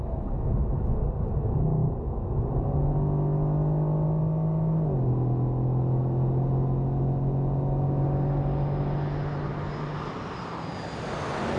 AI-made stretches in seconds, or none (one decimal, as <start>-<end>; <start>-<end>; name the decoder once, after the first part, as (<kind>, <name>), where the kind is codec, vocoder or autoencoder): none